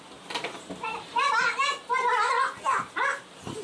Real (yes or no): yes